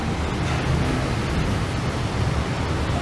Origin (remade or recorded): recorded